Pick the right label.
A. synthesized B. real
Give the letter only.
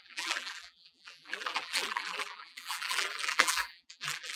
A